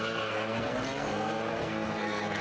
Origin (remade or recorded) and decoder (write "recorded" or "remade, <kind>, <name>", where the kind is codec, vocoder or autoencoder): remade, codec, SNAC